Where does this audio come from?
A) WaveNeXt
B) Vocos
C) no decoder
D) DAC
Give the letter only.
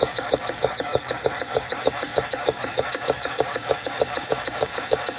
D